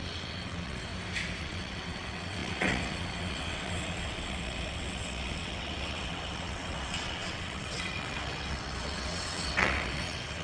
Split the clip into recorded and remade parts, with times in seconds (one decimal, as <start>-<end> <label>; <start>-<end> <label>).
0.0-0.9 remade; 0.9-1.4 recorded; 1.4-10.4 remade